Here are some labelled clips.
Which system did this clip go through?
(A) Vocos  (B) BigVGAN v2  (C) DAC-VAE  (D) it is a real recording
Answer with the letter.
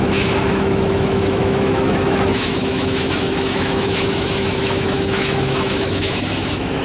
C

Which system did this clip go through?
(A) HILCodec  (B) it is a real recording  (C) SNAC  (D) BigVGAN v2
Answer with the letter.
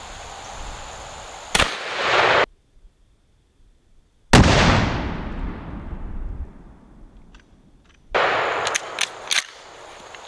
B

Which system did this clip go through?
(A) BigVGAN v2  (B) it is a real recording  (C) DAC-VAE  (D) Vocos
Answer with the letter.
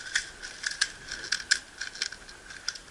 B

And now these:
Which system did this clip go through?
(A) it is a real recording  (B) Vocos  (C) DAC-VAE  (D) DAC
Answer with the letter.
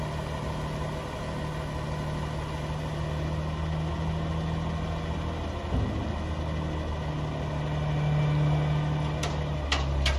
A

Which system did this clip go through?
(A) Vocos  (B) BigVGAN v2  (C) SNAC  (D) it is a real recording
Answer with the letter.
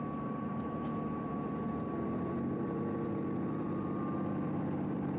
B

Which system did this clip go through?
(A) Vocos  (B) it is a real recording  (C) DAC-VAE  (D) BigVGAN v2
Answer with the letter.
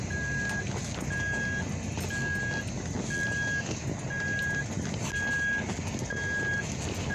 B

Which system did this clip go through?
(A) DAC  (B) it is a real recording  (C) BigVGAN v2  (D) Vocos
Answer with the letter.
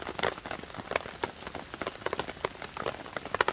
B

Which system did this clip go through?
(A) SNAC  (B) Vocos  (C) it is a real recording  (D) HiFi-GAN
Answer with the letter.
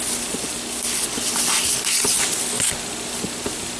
C